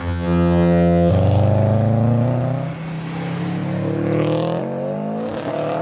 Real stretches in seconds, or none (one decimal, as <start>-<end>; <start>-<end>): 1.1-5.8